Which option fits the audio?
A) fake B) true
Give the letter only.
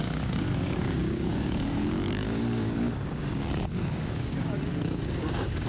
A